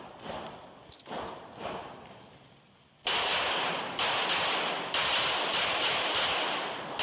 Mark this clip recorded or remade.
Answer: recorded